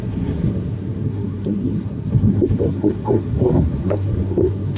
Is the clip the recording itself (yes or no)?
no